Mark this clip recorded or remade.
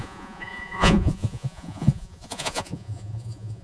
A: remade